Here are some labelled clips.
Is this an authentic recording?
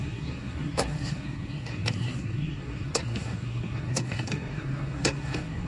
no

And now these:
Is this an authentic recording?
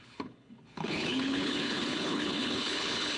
no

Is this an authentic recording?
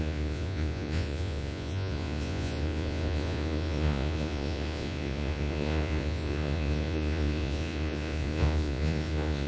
no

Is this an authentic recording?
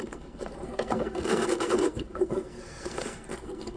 no